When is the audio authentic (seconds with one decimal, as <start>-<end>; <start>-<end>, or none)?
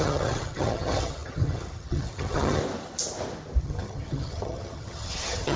2.6-3.6